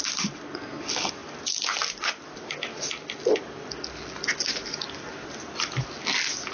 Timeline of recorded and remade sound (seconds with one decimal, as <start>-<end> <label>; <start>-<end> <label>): 0.0-6.5 recorded